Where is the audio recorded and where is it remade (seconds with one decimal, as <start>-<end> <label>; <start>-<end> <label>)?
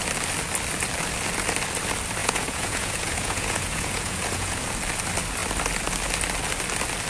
0.0-2.2 recorded; 2.2-4.6 remade; 4.6-7.1 recorded